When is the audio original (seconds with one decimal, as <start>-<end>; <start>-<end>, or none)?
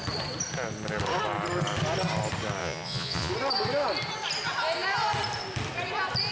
0.0-2.6; 3.3-6.3